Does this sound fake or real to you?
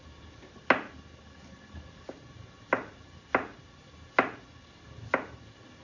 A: real